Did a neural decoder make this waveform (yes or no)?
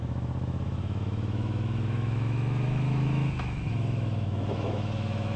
yes